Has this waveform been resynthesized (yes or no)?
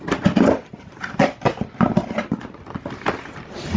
no